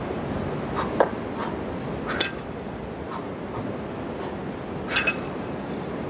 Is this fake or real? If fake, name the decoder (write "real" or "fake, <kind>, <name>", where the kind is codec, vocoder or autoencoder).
real